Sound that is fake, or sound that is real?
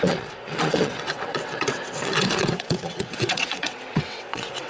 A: fake